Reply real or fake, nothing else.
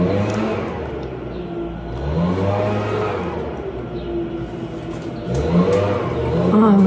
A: real